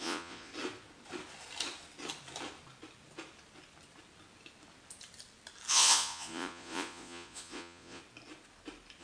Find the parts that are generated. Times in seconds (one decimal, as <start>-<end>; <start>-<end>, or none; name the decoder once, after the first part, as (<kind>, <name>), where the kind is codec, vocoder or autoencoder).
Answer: 0.0-0.5 (vocoder, Vocos); 5.7-8.0